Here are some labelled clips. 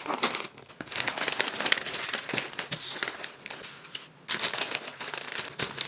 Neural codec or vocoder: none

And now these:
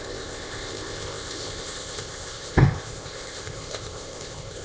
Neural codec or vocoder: codec, ZipCodec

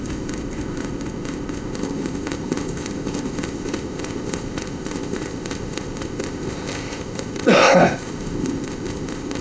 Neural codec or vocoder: codec, ZipCodec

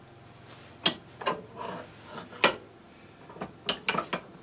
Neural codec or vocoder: none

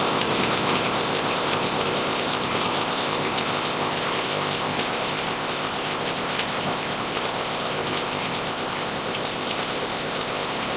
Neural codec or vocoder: codec, ZipCodec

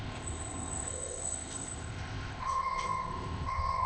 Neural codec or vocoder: codec, ZipCodec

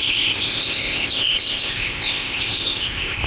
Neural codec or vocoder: codec, ZipCodec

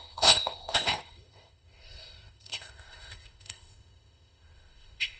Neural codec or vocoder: codec, ZipCodec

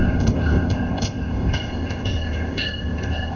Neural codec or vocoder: codec, ZipCodec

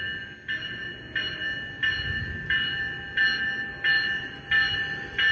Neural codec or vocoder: none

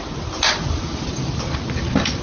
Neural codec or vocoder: none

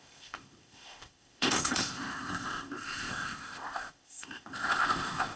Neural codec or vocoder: codec, ZipCodec